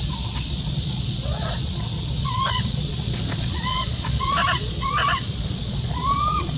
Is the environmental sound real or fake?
fake